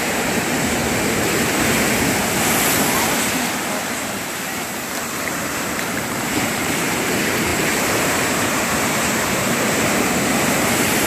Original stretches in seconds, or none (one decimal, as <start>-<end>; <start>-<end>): 0.8-5.2